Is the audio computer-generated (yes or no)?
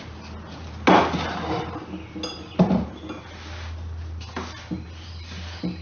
no